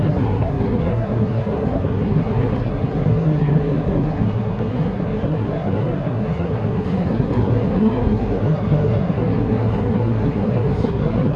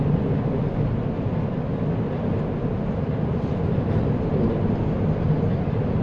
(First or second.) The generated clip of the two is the first